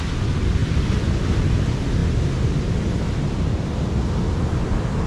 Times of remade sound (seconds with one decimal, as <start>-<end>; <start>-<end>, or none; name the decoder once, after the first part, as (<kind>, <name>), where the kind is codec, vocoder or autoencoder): none